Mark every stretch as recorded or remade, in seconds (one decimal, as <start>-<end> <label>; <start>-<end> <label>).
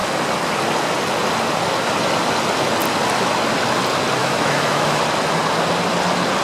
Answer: 0.0-4.2 recorded; 4.2-5.0 remade; 5.0-6.4 recorded